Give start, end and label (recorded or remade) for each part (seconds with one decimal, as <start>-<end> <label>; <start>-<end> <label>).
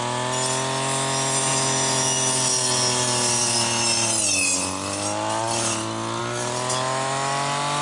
0.0-7.8 recorded